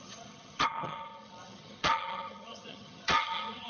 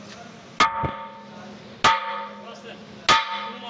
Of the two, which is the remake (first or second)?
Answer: first